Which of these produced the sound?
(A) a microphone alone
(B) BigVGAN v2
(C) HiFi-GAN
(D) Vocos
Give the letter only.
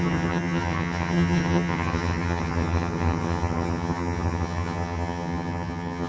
C